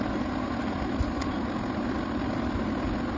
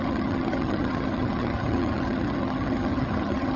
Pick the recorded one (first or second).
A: first